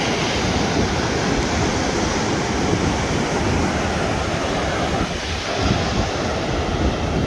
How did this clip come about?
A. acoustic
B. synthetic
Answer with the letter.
A